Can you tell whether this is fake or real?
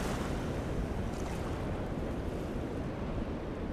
real